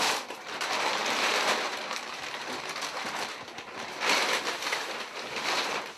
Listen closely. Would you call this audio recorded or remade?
remade